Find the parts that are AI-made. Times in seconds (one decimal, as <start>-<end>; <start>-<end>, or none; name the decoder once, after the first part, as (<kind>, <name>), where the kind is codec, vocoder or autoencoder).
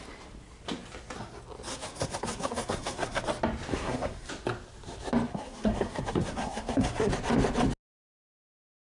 1.7-3.2 (codec, SNAC); 3.7-4.3; 5.3-7.1